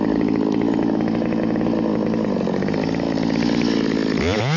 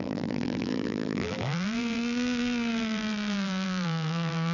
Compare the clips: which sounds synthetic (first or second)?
second